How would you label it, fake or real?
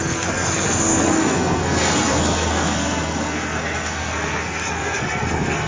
fake